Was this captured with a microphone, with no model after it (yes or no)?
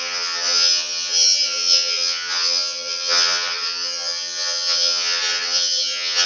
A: no